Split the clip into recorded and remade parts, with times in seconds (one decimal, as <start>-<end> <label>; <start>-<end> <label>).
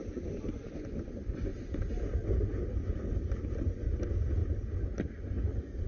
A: 0.0-3.0 recorded; 3.0-3.5 remade; 3.5-5.9 recorded